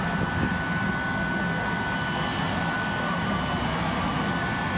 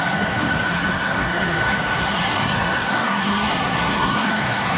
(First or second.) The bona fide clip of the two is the first